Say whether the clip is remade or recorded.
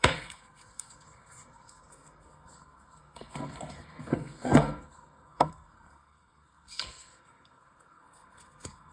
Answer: remade